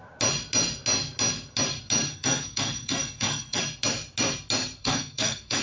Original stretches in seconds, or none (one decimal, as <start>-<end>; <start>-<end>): 0.0-2.1; 3.6-4.8